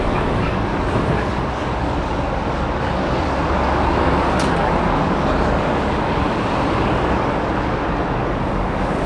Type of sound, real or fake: fake